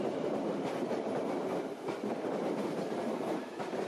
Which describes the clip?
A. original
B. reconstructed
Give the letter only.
B